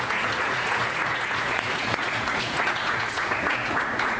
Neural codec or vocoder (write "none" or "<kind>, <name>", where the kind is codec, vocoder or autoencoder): vocoder, Vocos